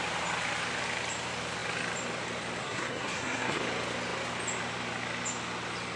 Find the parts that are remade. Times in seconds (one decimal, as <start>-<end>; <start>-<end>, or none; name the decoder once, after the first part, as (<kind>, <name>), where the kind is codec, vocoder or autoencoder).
2.6-3.6 (codec, SNAC)